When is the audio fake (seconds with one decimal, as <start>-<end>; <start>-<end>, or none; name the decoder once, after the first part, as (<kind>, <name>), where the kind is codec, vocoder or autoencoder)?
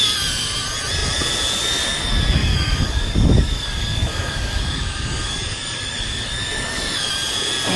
2.4-7.1 (codec, DAC)